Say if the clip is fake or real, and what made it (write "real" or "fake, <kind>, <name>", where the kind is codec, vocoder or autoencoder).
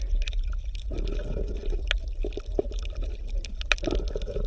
real